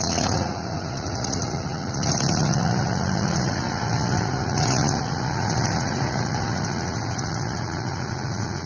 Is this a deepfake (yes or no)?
yes